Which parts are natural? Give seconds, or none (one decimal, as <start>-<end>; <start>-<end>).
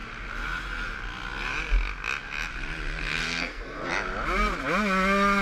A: 0.0-3.2; 3.9-5.4